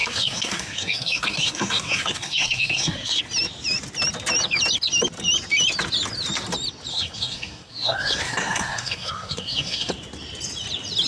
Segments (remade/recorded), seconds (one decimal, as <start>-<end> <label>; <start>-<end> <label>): 0.0-3.2 remade; 3.2-6.9 recorded; 6.9-9.9 remade; 9.9-11.1 recorded